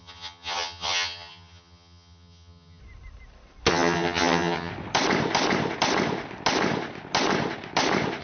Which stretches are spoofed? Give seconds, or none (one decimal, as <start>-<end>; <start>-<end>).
0.0-2.8; 3.7-4.7